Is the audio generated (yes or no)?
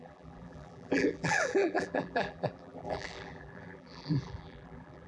yes